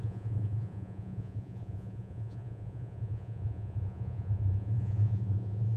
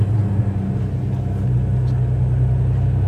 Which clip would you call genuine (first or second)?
second